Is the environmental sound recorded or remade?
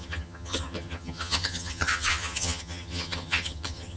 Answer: remade